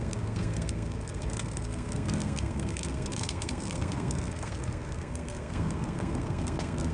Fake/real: fake